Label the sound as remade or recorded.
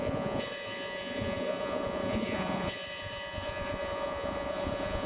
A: remade